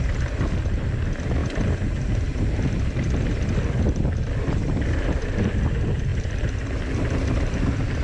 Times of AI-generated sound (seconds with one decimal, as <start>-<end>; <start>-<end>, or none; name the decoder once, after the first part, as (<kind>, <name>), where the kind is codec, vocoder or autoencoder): none